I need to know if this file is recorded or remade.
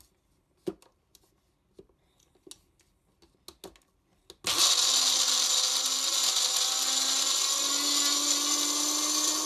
recorded